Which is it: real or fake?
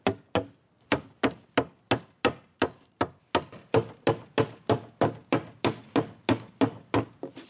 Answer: real